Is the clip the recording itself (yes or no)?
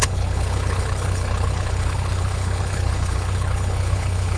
no